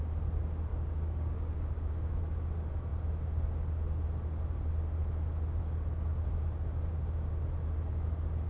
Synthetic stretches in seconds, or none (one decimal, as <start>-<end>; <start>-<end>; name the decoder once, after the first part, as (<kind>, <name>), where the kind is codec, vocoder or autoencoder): 0.7-2.2 (codec, DAC)